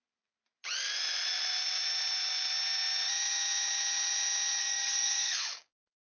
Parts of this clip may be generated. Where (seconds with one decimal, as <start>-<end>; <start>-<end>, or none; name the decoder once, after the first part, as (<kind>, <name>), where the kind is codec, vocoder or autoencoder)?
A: 4.6-6.1 (codec, DAC)